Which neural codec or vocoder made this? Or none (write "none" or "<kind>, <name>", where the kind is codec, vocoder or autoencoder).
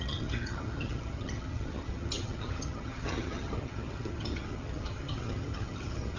vocoder, HiFi-GAN